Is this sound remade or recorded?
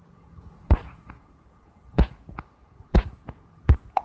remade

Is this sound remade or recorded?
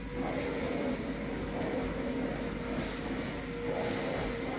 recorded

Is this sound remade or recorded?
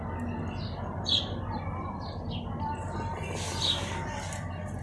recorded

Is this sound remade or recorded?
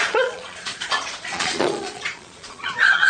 remade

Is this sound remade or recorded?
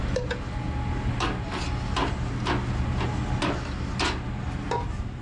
recorded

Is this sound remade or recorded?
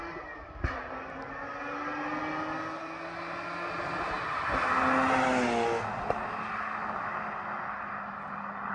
recorded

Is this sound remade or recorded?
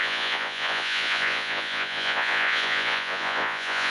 remade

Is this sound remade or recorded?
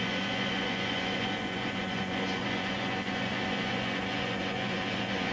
remade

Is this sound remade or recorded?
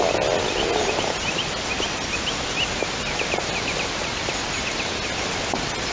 recorded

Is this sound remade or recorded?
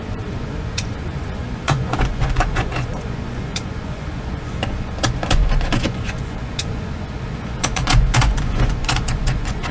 remade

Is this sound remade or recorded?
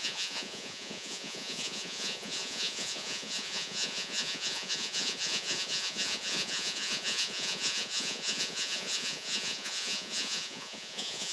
remade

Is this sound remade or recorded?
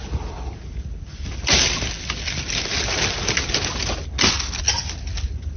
recorded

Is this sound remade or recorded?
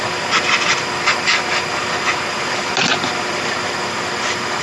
recorded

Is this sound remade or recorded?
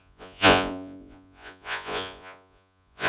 remade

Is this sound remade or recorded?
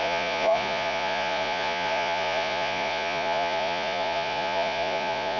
remade